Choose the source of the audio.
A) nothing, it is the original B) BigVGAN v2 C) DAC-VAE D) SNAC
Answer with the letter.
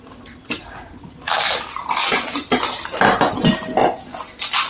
A